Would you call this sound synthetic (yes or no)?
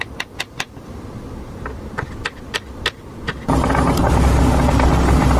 no